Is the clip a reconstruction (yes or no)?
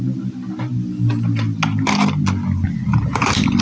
no